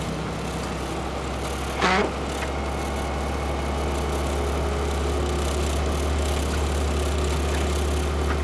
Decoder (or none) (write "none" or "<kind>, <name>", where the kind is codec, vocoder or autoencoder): none